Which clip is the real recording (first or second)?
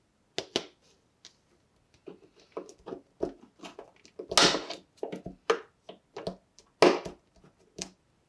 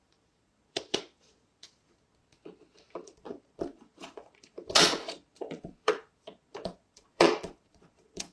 first